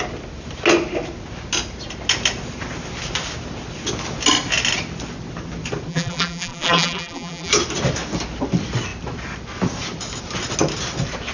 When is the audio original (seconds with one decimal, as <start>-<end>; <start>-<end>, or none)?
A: 0.0-5.9; 7.5-11.3

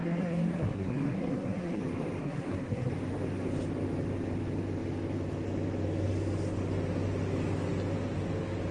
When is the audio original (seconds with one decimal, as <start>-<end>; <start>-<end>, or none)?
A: 1.8-2.2; 2.9-8.7

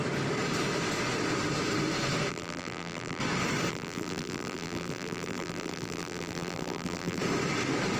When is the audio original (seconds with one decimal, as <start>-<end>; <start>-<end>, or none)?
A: 0.0-2.3; 3.2-3.7; 7.2-8.0

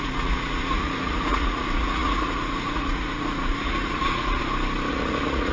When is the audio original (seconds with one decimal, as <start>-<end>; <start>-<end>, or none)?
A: 4.4-4.9

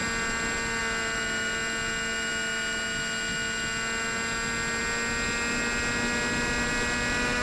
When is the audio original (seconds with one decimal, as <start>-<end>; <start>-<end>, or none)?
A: 0.0-7.4

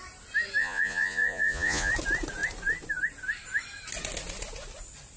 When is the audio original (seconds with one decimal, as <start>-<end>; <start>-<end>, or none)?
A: 0.0-0.6; 1.9-5.2

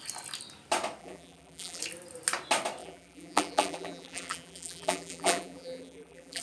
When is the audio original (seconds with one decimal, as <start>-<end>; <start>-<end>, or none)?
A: 0.0-1.0; 1.8-2.8